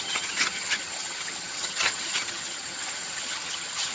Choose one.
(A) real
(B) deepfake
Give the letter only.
B